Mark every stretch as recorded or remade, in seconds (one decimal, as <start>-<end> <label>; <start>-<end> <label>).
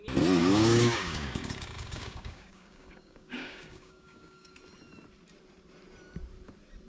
0.0-0.4 recorded; 0.4-4.5 remade; 4.5-6.9 recorded